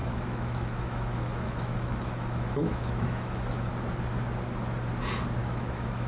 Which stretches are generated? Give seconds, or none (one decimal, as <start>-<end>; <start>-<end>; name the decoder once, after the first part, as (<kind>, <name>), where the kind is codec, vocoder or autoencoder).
0.0-3.7 (autoencoder, DAC-VAE); 5.4-6.1